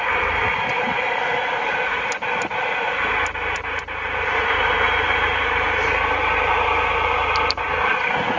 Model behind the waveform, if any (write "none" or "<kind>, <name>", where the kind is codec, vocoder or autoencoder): none